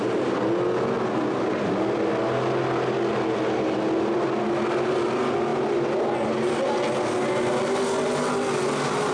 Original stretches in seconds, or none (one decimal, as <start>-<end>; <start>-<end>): 0.0-9.1